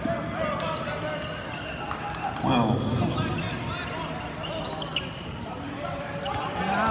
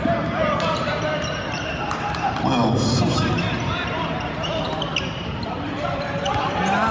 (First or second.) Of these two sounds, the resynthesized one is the second